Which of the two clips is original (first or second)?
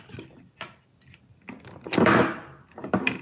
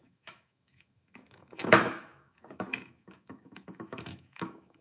first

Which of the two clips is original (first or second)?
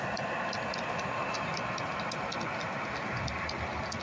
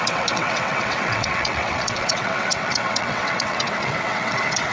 first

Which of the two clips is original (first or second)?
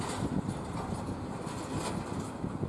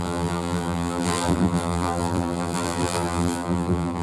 first